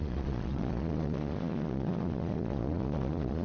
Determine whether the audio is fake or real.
fake